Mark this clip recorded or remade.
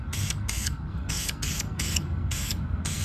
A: remade